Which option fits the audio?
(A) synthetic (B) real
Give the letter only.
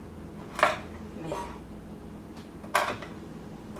B